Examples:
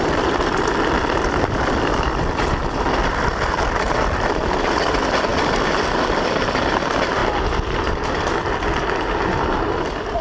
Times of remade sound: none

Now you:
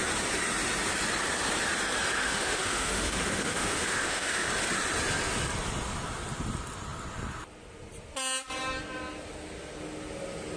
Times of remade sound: 2.2-4.5